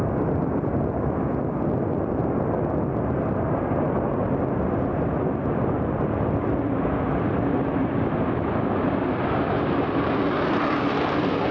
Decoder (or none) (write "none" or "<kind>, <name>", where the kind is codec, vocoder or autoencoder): none